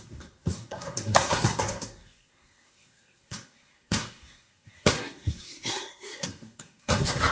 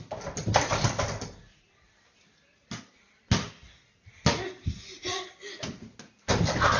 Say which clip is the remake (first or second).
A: first